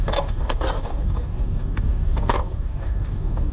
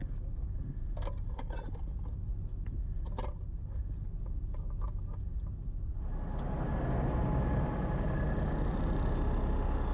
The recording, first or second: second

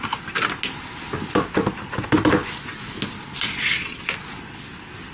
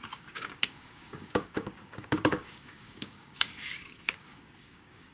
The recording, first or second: first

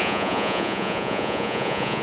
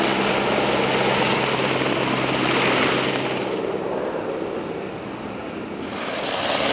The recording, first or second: second